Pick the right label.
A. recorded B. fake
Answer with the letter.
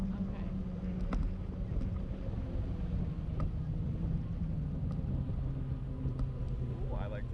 A